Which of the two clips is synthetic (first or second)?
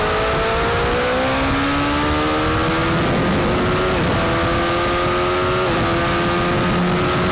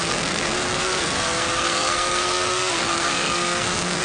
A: second